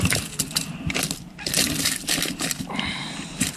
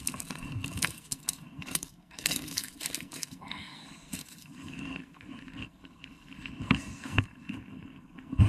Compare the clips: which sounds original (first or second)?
first